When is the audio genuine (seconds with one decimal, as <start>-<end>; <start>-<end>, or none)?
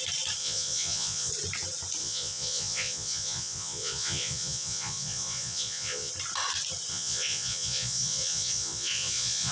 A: 0.0-0.4; 1.3-2.0; 6.1-6.9